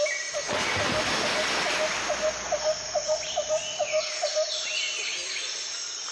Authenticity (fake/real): real